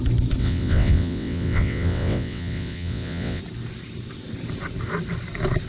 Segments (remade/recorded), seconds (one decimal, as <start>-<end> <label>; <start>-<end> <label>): 0.0-0.4 recorded; 0.4-3.4 remade; 3.4-5.7 recorded